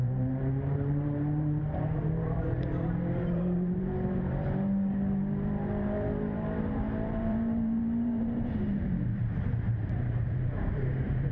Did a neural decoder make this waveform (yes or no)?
yes